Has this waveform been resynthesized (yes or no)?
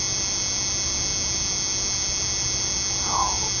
no